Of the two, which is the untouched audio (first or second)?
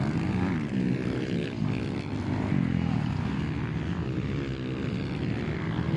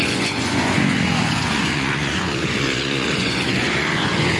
first